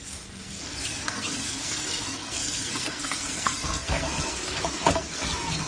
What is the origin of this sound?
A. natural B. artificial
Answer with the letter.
B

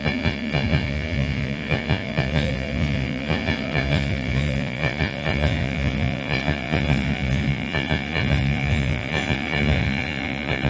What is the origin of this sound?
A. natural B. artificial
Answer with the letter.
B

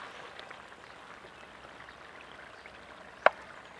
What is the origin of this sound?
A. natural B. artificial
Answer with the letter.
A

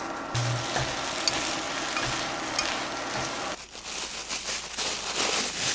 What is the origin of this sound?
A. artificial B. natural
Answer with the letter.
B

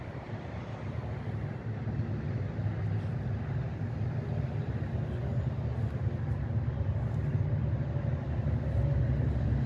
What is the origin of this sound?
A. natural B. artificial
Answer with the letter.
A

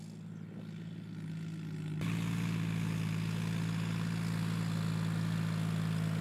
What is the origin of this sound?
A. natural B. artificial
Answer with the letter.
A